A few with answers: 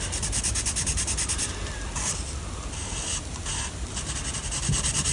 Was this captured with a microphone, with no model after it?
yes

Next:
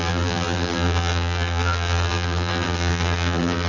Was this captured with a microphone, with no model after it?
no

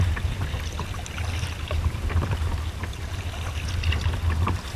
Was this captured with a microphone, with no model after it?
yes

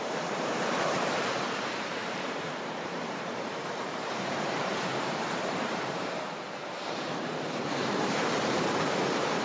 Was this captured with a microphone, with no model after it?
no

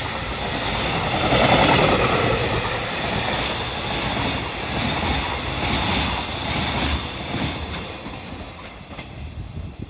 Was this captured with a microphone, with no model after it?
yes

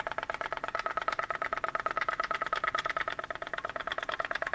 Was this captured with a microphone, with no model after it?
no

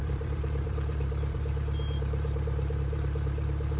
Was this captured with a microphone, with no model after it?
no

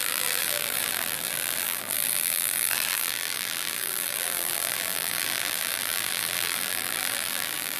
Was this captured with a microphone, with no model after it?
no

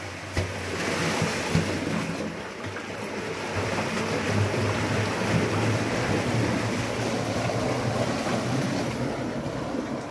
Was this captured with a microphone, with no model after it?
yes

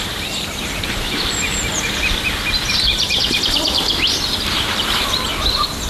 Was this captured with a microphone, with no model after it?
no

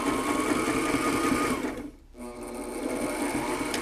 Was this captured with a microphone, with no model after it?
yes